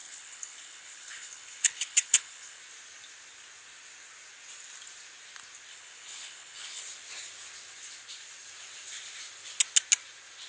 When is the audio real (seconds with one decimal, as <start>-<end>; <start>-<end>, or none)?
2.6-5.7; 6.8-10.5